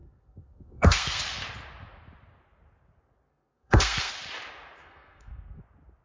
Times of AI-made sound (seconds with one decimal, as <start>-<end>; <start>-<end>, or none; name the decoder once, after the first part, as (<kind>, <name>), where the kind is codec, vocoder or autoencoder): 0.0-1.2 (codec, SNAC); 3.3-4.1; 4.8-5.6